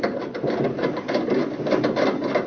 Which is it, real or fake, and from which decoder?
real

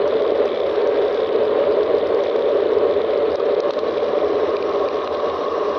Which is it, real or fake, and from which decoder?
real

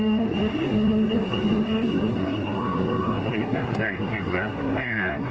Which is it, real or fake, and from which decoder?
fake, codec, SNAC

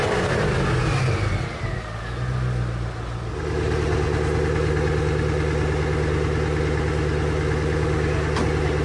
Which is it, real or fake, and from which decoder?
real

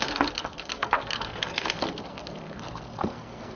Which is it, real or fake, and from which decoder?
fake, codec, SNAC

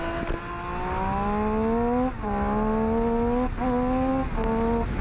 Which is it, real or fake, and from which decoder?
real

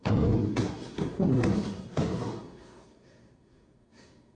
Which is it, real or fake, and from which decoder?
fake, codec, SNAC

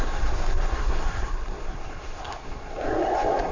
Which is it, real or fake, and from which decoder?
fake, codec, SNAC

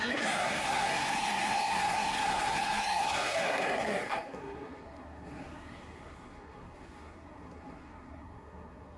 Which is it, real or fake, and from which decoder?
fake, codec, SNAC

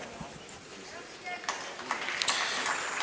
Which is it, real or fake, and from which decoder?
real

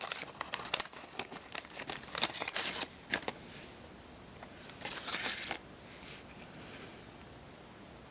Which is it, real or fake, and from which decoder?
real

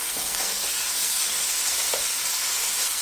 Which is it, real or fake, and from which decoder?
fake, codec, SNAC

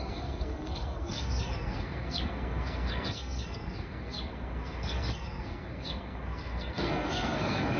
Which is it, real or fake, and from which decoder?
fake, codec, SNAC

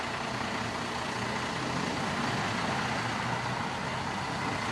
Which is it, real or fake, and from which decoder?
real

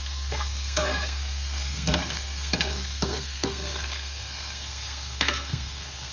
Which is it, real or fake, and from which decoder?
fake, codec, SNAC